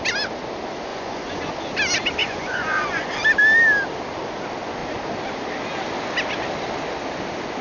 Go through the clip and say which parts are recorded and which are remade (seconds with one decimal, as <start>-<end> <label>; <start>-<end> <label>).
0.0-0.9 recorded; 0.9-1.5 remade; 1.5-2.2 recorded; 2.2-3.1 remade; 3.1-7.6 recorded